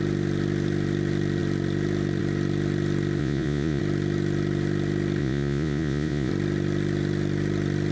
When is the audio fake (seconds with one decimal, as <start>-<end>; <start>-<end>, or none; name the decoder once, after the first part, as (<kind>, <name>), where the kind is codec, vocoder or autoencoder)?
3.2-3.8 (vocoder, Vocos); 5.2-6.3